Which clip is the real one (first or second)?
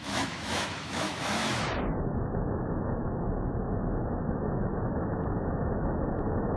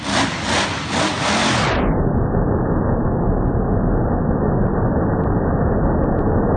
second